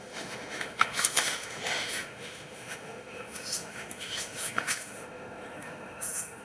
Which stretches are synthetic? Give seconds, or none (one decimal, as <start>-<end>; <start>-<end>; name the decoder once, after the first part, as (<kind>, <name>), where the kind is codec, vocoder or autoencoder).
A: 0.0-6.4 (autoencoder, DAC-VAE)